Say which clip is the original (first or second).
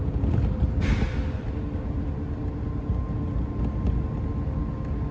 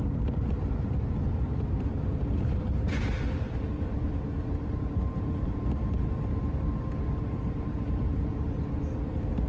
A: first